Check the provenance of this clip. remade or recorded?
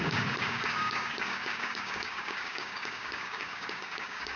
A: remade